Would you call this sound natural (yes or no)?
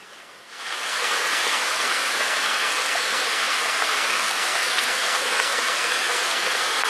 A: no